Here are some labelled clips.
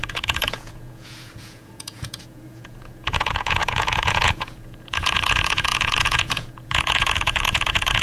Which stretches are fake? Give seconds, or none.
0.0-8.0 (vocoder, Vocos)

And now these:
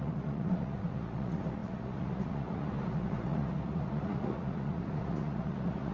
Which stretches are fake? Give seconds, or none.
0.0-5.9 (vocoder, Vocos)

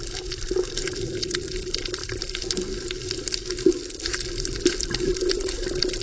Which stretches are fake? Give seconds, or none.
none

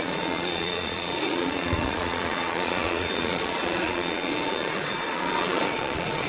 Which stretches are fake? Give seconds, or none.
0.0-6.3 (vocoder, Vocos)

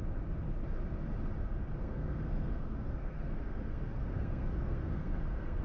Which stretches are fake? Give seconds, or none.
1.8-5.6 (codec, SNAC)

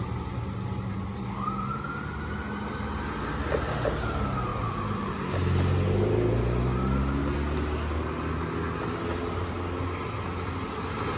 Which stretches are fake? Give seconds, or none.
4.5-5.2 (vocoder, BigVGAN v2)